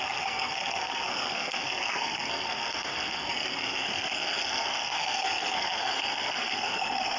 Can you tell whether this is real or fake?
fake